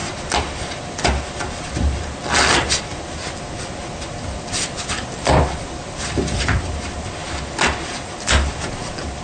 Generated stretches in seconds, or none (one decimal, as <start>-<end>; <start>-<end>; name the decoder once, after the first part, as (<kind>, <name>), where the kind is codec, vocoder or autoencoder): 0.0-7.2 (vocoder, BigVGAN v2); 7.8-9.2